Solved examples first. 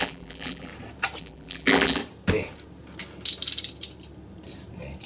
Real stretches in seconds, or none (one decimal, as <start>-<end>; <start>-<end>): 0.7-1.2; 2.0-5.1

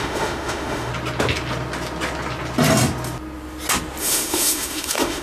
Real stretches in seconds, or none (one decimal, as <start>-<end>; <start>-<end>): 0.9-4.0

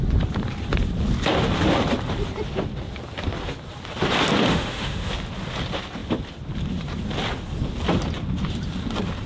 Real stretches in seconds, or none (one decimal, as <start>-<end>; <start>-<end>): 0.0-4.5; 5.1-9.3